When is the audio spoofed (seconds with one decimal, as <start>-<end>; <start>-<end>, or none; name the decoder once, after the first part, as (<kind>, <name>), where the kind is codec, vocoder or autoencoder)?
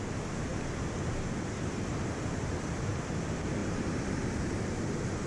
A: 1.9-2.9 (vocoder, BigVGAN v2); 3.6-4.7